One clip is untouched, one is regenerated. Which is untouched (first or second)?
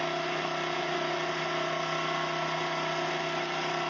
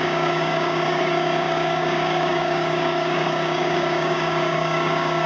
first